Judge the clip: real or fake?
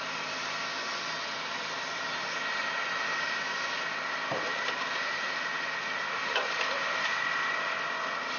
real